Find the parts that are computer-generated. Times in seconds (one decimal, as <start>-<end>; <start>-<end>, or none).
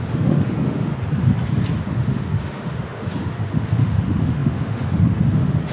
0.0-0.9; 1.8-5.7